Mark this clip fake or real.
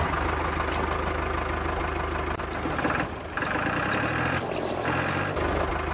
real